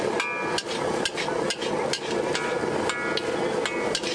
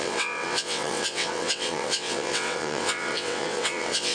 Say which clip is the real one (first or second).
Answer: first